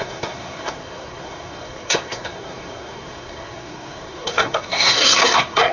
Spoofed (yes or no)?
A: yes